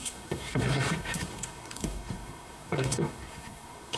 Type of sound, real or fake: fake